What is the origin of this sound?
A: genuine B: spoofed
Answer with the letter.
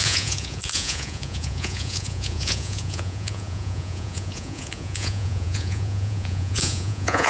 B